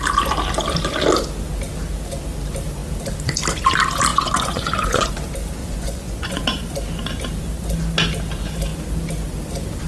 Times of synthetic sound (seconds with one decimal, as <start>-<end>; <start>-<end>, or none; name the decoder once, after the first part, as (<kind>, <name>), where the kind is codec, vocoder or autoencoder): 4.1-5.1 (vocoder, Vocos); 5.6-6.4